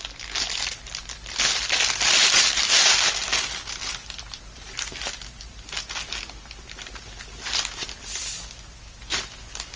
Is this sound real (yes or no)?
yes